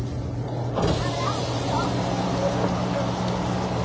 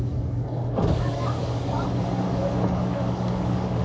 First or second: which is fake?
second